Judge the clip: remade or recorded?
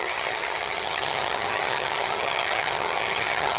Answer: remade